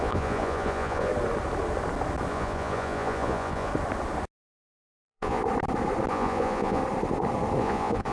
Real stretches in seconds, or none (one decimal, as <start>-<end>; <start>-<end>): 1.1-2.3; 3.7-4.5; 5.4-6.1; 6.8-7.6